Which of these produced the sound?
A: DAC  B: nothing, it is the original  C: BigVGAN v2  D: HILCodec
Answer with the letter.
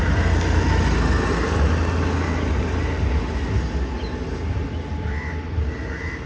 B